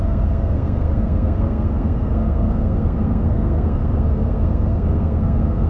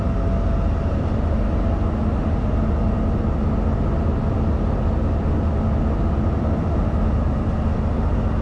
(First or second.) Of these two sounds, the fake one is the first